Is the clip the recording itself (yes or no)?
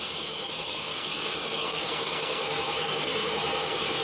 no